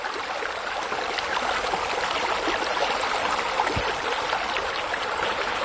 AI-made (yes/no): no